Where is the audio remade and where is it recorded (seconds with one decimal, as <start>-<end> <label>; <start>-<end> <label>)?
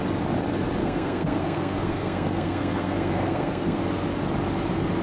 0.0-0.8 recorded; 0.8-3.8 remade; 3.8-5.0 recorded